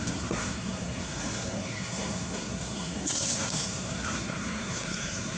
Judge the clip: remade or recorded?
remade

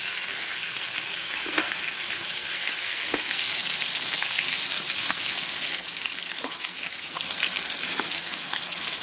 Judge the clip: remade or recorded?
remade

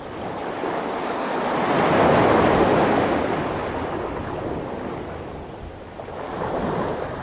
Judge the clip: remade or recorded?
recorded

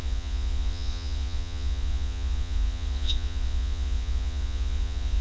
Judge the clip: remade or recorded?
remade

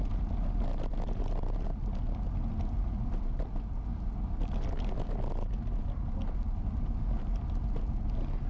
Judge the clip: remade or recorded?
recorded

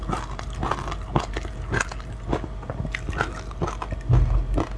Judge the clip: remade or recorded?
recorded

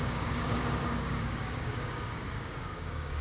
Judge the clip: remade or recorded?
remade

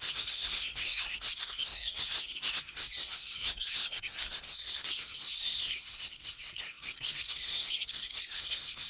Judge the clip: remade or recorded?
remade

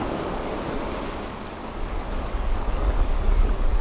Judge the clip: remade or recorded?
remade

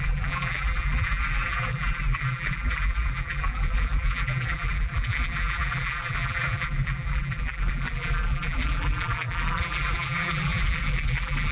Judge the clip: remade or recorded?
remade